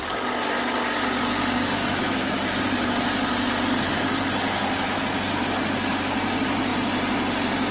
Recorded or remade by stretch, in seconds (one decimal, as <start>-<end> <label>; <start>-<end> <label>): 0.0-1.8 recorded; 1.8-2.5 remade; 2.5-7.7 recorded